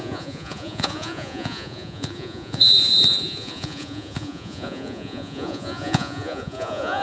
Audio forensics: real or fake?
fake